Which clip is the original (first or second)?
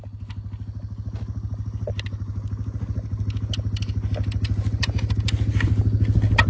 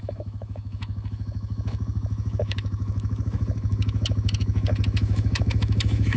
first